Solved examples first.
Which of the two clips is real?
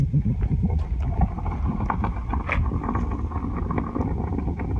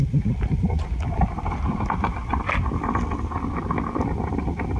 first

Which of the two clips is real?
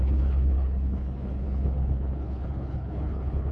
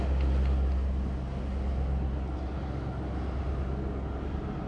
second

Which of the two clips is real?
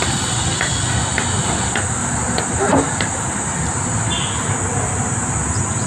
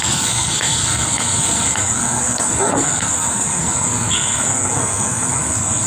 first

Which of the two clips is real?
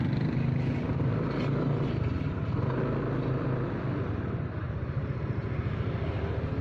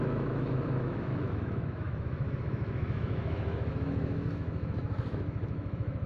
first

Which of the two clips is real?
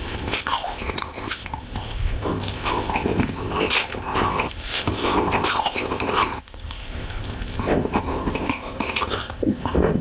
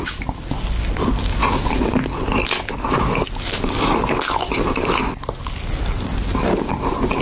second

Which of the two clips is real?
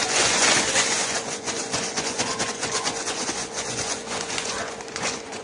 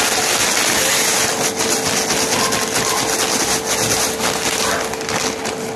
second